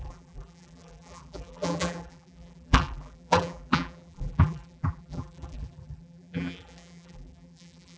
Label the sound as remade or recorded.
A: remade